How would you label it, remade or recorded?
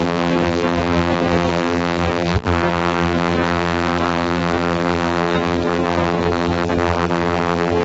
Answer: remade